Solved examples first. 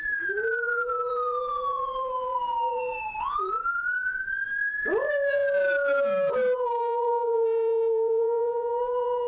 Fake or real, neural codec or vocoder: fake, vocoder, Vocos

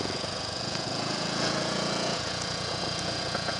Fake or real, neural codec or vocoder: fake, vocoder, Vocos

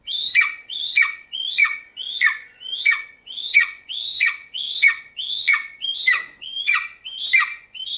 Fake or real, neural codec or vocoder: fake, vocoder, Vocos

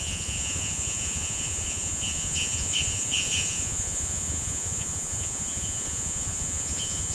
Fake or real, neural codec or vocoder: fake, vocoder, Vocos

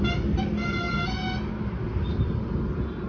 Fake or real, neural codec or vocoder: real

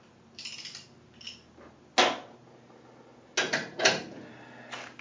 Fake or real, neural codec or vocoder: real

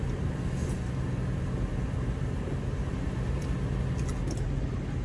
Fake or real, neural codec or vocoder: real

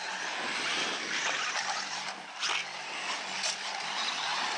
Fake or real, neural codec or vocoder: real